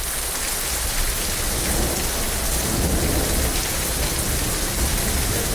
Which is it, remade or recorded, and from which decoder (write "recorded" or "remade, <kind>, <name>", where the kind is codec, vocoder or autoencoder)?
recorded